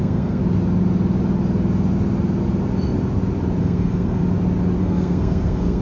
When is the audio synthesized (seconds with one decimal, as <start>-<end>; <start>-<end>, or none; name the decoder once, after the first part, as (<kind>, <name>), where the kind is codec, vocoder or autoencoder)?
0.0-0.4 (codec, SNAC); 3.6-4.2; 4.8-5.8